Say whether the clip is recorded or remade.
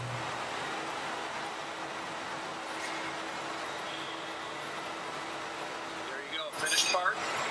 recorded